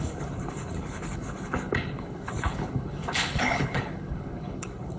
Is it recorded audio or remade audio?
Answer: remade